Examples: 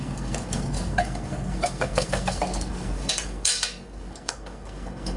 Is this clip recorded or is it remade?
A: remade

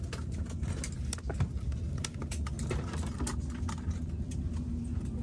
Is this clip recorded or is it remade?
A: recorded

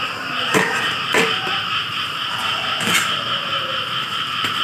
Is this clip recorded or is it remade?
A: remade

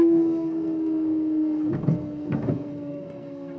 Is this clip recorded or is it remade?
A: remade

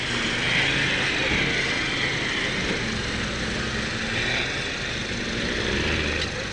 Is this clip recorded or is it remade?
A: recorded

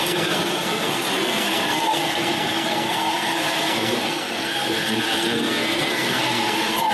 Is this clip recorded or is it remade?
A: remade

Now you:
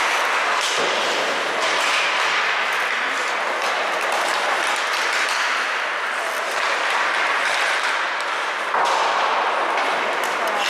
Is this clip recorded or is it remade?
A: recorded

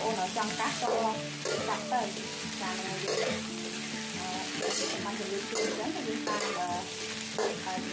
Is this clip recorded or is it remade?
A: recorded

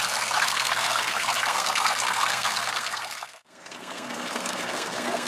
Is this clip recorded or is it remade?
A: remade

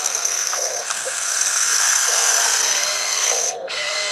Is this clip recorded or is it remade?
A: remade